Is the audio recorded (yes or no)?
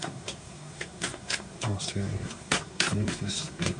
no